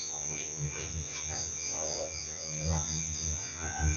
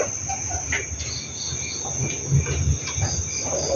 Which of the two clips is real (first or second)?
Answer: second